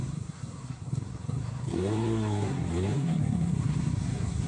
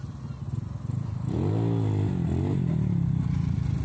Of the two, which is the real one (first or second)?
second